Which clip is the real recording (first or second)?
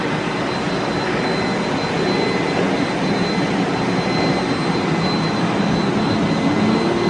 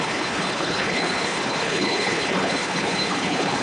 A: first